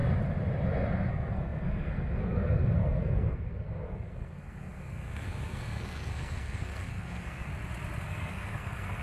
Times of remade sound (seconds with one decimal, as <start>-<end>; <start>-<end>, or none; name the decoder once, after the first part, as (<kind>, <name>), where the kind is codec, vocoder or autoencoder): 1.1-7.5 (codec, SNAC); 8.0-9.0

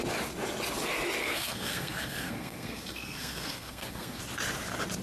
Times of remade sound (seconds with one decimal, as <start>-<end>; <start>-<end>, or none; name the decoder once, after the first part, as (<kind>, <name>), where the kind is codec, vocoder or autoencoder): 1.2-4.2 (codec, SNAC)